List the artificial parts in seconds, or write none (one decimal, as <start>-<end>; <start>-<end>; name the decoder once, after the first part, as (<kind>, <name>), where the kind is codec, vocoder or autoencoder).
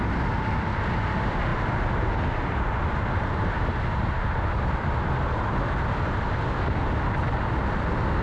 none